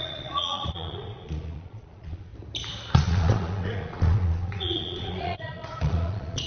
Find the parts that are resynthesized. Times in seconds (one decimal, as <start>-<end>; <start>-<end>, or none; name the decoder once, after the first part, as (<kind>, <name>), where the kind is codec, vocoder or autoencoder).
0.0-2.3 (vocoder, Vocos); 2.9-6.5